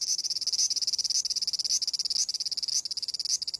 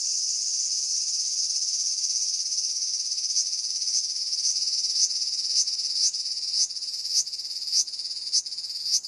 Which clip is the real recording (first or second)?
first